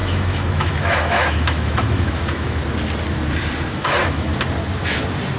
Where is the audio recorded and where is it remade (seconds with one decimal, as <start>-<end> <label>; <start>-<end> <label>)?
0.0-2.6 remade; 2.6-3.7 recorded; 3.7-4.3 remade; 4.3-5.4 recorded